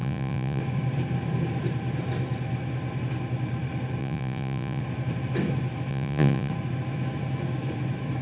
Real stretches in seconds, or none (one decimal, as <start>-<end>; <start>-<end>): 0.6-4.0; 4.8-5.9; 6.5-8.2